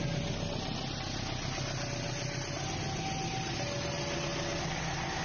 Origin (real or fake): real